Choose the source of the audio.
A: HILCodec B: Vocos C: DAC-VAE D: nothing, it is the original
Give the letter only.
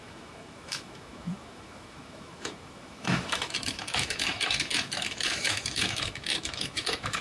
C